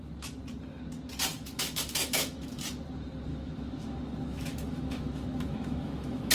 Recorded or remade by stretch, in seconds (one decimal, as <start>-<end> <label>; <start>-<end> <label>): 0.0-1.3 recorded; 1.3-2.6 remade; 2.6-3.3 recorded; 3.3-6.3 remade